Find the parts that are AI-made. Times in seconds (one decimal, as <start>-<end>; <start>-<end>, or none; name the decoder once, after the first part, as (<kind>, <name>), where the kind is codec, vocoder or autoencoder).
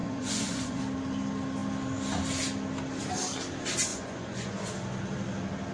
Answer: 0.0-0.8 (vocoder, Vocos); 3.9-4.7